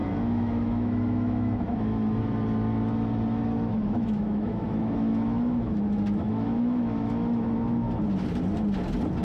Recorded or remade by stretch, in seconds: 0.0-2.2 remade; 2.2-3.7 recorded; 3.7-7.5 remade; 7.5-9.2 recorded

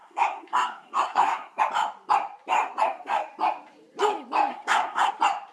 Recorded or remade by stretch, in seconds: 0.0-1.6 remade; 1.6-2.6 recorded; 2.6-3.2 remade; 3.2-4.5 recorded; 4.5-5.1 remade; 5.1-5.5 recorded

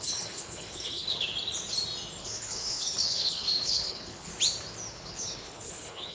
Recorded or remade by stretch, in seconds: 0.0-1.3 remade; 1.3-2.2 recorded; 2.2-4.3 remade; 4.3-4.9 recorded; 4.9-6.1 remade

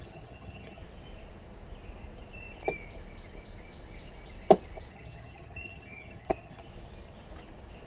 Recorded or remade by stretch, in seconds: 0.0-0.8 remade; 0.8-4.9 recorded; 4.9-6.7 remade; 6.7-7.9 recorded